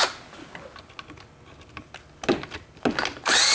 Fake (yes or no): no